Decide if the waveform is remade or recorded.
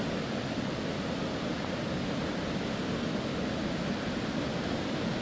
recorded